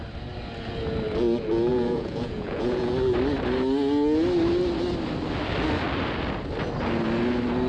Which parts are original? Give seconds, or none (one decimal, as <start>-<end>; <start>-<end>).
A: 0.0-1.7; 2.9-7.7